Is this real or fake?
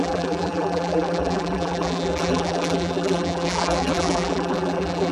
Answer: fake